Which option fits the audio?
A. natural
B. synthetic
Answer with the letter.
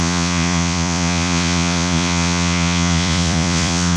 B